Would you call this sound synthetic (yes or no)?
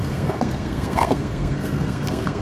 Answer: yes